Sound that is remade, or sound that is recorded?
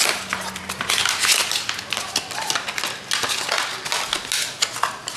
recorded